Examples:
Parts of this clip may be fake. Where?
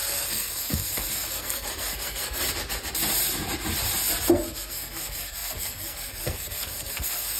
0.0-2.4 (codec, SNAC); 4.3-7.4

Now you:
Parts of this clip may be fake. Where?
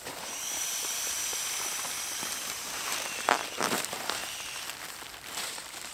0.0-1.3 (vocoder, BigVGAN v2); 2.5-4.2; 5.2-5.9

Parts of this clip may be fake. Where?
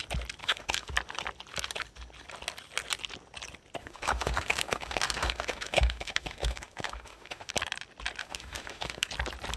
0.4-0.9 (autoencoder, DAC-VAE); 3.8-7.5; 8.2-9.1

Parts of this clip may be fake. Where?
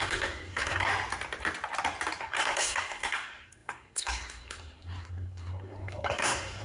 0.0-0.9 (codec, SNAC); 2.2-6.6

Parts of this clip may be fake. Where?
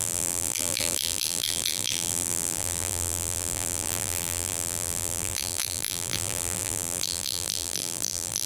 0.0-8.5 (vocoder, BigVGAN v2)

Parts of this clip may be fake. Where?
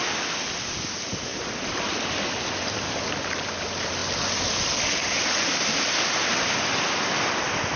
none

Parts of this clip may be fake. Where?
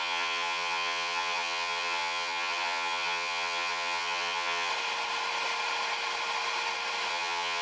0.0-4.7 (vocoder, HiFi-GAN); 7.1-7.6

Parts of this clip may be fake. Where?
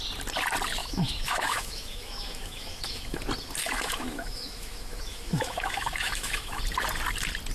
0.8-3.2 (autoencoder, DAC-VAE); 3.6-6.6